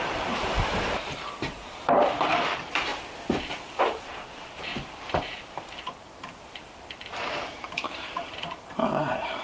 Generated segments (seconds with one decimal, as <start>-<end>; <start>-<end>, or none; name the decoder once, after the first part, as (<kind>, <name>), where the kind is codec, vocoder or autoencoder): 0.0-2.9 (vocoder, BigVGAN v2); 3.4-9.4